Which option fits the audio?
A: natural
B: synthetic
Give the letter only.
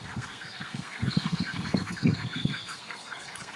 B